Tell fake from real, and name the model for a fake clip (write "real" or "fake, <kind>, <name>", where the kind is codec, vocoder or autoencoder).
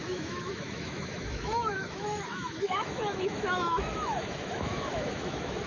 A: fake, autoencoder, DAC-VAE